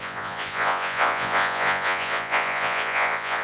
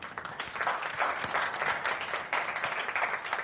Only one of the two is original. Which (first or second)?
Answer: second